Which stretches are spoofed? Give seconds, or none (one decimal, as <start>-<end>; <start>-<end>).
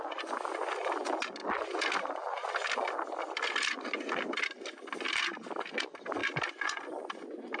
none